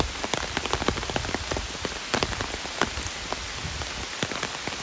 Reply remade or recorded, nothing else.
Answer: recorded